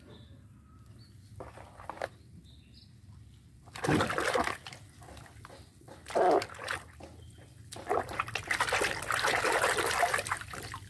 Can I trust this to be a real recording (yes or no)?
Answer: yes